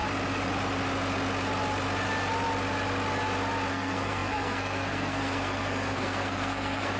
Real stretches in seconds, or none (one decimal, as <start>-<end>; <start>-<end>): 0.0-3.7